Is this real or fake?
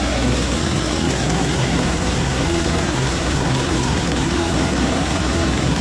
fake